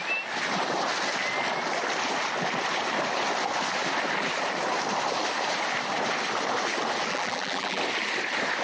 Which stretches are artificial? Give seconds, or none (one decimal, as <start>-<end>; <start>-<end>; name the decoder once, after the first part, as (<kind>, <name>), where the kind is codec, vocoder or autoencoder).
7.1-7.8 (vocoder, BigVGAN v2)